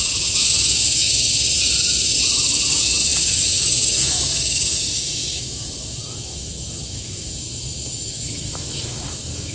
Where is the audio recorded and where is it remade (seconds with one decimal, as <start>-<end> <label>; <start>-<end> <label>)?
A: 0.0-9.5 remade

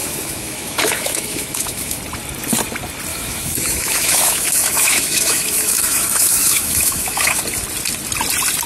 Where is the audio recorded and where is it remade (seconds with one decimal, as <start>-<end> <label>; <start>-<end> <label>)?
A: 0.0-2.0 remade; 2.0-3.1 recorded; 3.1-7.4 remade; 7.4-8.7 recorded

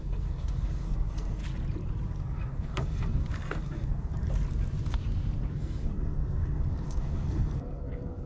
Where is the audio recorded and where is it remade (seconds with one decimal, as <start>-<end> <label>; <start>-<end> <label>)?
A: 0.0-1.4 remade; 1.4-2.2 recorded; 2.2-4.1 remade; 4.1-5.6 recorded; 5.6-8.3 remade

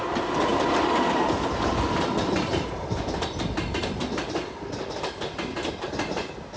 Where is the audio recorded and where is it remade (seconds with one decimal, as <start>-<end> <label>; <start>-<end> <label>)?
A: 0.0-0.5 recorded; 0.5-1.7 remade; 1.7-6.6 recorded

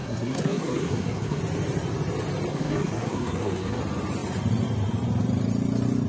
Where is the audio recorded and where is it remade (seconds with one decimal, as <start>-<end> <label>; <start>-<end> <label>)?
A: 0.0-1.4 remade; 1.4-2.5 recorded; 2.5-3.8 remade; 3.8-6.1 recorded